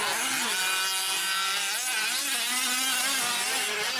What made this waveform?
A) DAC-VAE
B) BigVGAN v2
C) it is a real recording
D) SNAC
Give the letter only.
C